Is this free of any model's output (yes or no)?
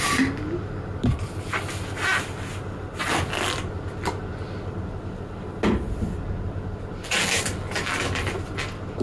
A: yes